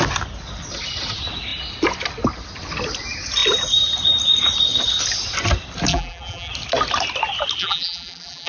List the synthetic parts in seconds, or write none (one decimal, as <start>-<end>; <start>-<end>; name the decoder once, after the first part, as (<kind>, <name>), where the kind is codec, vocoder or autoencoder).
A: 5.9-6.5 (vocoder, BigVGAN v2); 7.6-8.5